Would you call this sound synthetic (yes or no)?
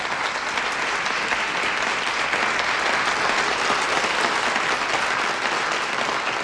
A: no